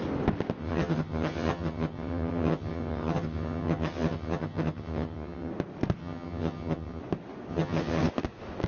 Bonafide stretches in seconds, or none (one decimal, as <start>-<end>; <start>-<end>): 0.0-0.6; 5.5-6.0; 7.0-7.5; 8.1-8.7